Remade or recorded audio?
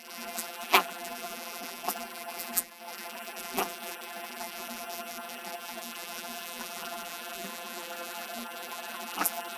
remade